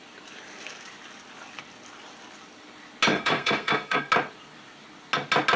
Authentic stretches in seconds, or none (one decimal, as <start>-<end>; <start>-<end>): 0.0-3.1; 4.1-5.6